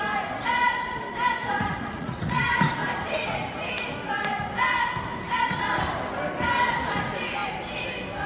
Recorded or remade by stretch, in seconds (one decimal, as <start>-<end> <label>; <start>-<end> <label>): 0.0-1.4 recorded; 1.4-2.7 remade; 2.7-8.3 recorded